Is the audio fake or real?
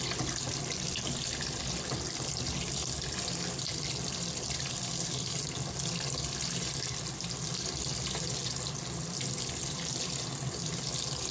real